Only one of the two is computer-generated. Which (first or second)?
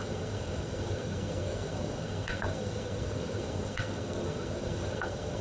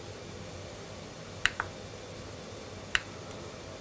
first